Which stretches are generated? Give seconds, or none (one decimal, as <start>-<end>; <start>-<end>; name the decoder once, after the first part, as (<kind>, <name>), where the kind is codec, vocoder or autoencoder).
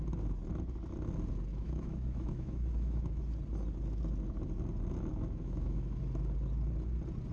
1.5-3.2 (autoencoder, DAC-VAE); 5.1-6.0